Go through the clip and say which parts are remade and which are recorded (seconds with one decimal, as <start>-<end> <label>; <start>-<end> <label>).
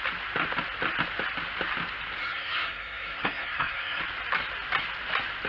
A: 0.0-2.2 recorded; 2.2-4.0 remade; 4.0-5.5 recorded